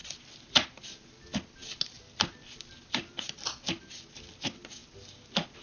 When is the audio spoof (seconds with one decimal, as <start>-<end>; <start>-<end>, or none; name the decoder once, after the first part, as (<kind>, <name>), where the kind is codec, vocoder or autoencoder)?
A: none